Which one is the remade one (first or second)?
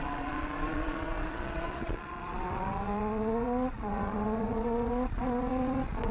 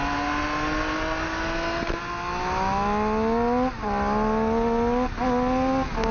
first